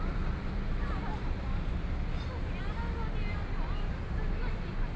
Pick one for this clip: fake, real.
real